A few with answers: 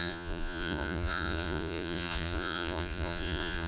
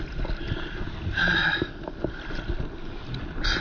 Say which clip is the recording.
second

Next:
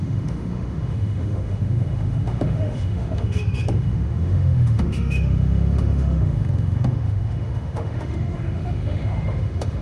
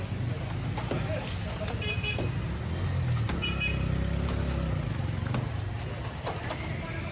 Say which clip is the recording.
second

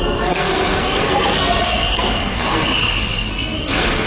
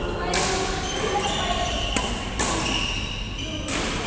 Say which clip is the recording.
second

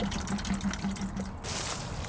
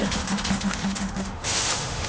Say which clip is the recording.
first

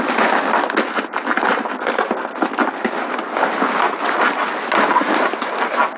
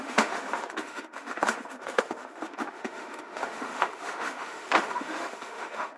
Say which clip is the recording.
first